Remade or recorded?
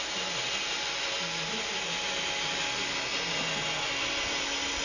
recorded